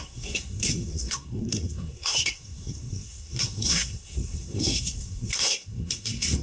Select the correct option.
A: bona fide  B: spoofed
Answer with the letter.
B